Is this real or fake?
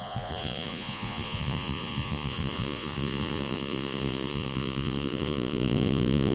fake